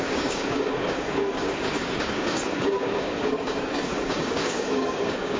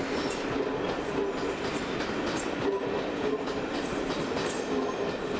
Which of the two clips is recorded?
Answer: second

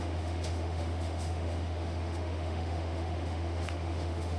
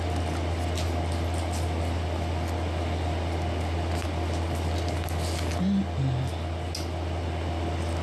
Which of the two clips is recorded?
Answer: second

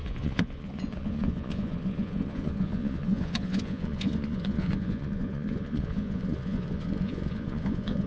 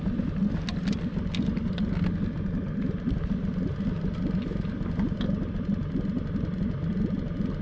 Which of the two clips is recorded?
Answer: second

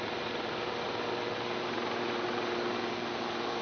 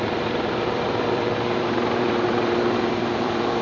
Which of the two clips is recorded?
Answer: first